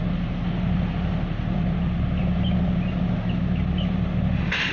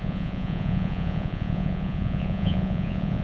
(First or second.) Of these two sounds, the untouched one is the first